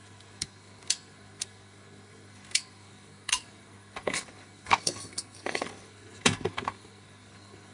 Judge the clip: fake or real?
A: fake